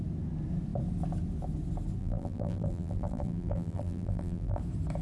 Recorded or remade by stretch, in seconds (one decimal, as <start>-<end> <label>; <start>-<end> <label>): 0.0-2.0 recorded; 2.0-4.6 remade; 4.6-5.0 recorded